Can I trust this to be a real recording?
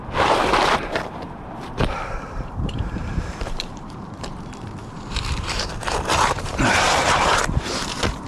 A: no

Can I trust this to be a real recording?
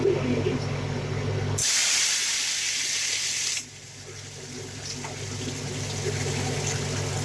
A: yes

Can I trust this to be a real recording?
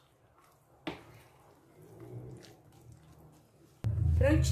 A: yes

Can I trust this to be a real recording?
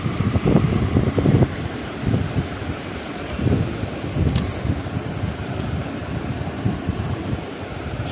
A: no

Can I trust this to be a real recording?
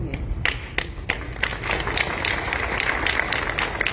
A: yes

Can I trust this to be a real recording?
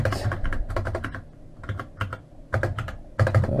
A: yes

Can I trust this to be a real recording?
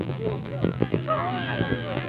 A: no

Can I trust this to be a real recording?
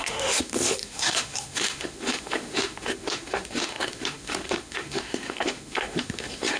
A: no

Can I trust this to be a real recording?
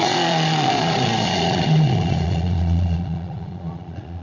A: no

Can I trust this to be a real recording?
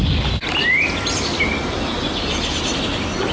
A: yes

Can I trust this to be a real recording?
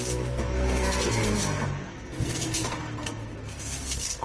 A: no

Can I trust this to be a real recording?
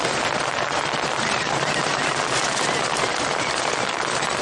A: no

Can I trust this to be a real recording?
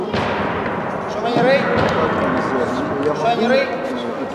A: yes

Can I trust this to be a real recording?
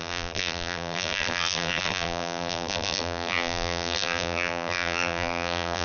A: no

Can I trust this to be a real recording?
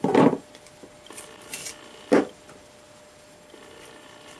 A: yes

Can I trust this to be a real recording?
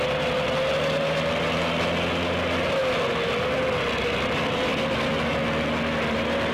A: yes